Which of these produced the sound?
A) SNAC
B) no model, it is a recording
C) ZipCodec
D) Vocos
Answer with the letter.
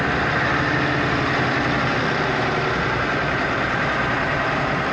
B